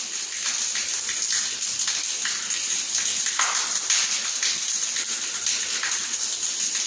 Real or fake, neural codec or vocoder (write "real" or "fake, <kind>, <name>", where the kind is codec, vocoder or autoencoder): real